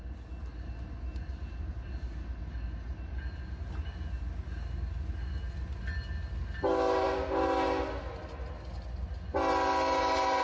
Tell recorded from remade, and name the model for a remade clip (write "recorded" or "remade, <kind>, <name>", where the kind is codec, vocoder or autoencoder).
recorded